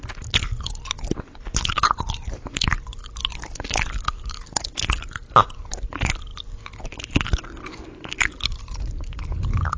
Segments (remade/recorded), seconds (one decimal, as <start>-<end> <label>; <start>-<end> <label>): 0.0-9.8 recorded